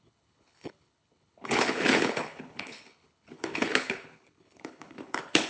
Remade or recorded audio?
remade